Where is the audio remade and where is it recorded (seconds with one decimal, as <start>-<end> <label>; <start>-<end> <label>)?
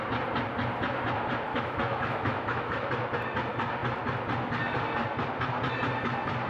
0.0-1.5 recorded; 1.5-2.9 remade; 2.9-6.5 recorded